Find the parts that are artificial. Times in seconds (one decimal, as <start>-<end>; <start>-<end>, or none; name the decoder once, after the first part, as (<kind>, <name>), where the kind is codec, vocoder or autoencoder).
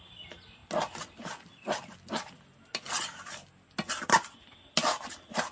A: none